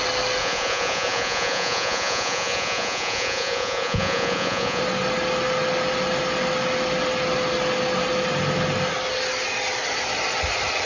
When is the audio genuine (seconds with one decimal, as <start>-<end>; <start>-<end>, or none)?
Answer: 0.0-0.4; 4.8-10.9